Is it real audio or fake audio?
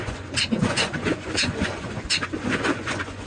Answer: fake